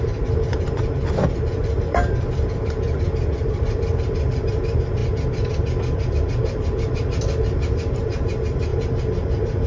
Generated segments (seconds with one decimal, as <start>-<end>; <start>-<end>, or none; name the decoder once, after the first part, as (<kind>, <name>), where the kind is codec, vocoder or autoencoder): 0.0-5.0 (vocoder, BigVGAN v2); 6.1-8.7